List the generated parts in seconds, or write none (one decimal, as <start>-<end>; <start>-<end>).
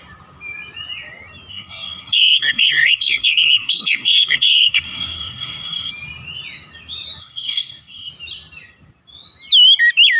1.5-5.9; 7.2-8.1